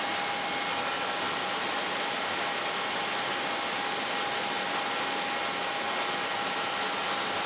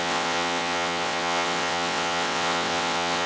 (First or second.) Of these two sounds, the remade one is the second